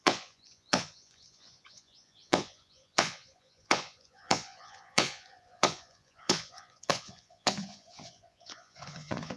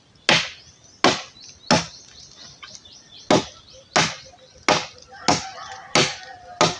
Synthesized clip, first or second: first